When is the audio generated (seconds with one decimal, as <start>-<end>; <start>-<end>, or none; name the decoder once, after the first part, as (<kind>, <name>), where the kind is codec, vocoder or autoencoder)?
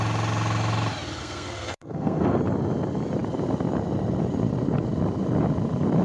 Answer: 1.2-2.4 (codec, SNAC)